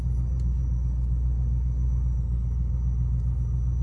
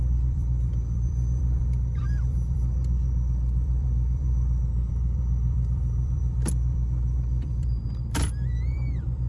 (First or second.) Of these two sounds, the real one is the first